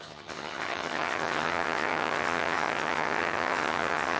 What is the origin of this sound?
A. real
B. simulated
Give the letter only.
B